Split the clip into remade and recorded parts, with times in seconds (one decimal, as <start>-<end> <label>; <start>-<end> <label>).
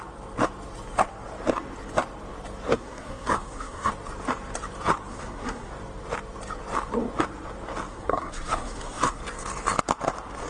0.0-2.7 recorded; 2.7-3.9 remade; 3.9-5.1 recorded; 5.1-5.7 remade; 5.7-7.9 recorded; 7.9-9.2 remade; 9.2-10.5 recorded